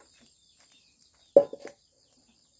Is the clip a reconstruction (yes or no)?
no